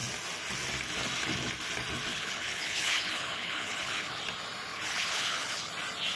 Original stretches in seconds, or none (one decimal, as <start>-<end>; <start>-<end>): 0.0-2.1; 4.2-4.7; 5.7-6.2